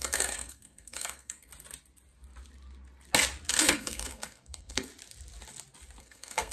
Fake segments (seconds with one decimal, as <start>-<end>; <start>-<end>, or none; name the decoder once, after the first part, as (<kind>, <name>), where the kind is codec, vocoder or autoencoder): 0.0-1.5 (codec, SNAC); 3.5-4.9; 6.0-6.5